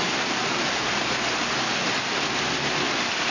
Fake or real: real